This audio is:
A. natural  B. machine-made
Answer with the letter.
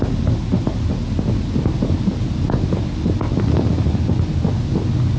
A